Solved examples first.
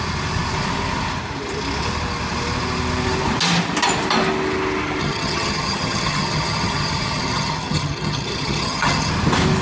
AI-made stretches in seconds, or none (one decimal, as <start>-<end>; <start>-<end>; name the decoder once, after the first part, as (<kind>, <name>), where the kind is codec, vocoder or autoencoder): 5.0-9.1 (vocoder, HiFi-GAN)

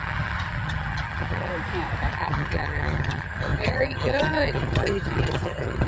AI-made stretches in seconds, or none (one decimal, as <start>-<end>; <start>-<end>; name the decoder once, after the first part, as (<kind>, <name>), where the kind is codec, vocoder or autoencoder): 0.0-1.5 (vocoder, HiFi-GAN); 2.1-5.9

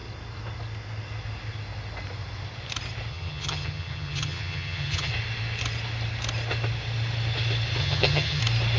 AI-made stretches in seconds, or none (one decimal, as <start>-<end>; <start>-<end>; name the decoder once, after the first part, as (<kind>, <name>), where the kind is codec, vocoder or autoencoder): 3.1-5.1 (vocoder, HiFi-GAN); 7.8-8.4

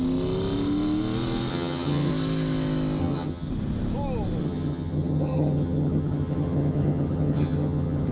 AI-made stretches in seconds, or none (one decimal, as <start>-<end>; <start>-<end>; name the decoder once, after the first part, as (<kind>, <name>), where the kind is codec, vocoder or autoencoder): 1.5-2.1 (vocoder, HiFi-GAN); 3.0-3.5; 4.4-8.1